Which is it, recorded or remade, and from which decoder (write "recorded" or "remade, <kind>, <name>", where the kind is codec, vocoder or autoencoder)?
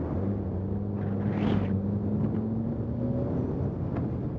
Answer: recorded